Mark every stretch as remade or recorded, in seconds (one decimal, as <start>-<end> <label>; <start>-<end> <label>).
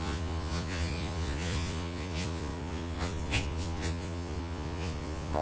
0.0-5.4 remade